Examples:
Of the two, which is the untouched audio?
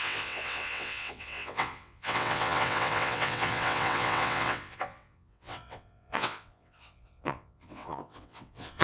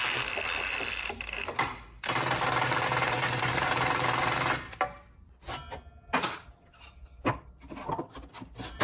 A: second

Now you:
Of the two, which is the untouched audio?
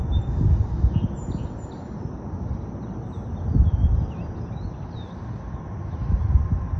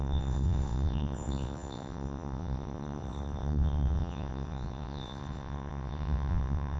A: first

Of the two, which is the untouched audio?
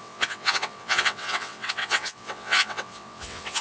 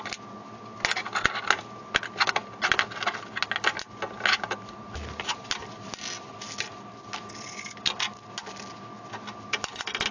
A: second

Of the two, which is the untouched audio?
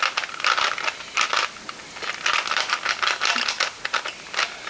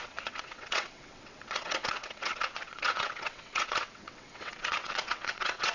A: first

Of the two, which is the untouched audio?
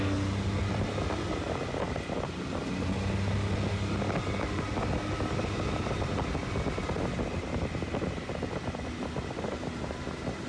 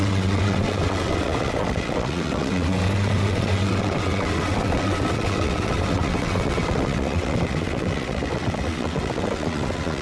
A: first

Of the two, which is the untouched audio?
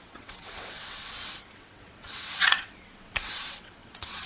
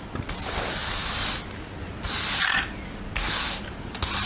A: second